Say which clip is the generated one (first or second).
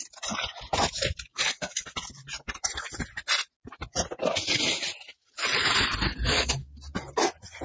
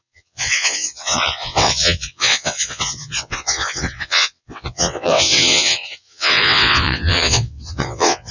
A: second